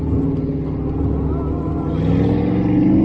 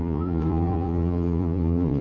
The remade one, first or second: second